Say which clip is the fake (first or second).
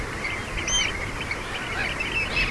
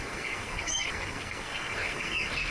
second